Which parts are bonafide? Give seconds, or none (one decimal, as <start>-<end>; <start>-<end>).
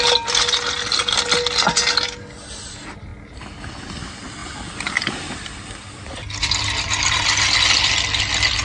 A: 0.0-8.6